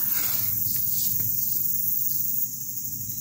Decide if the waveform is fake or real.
real